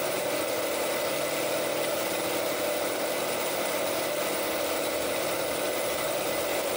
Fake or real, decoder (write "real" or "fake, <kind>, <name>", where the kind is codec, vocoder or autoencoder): real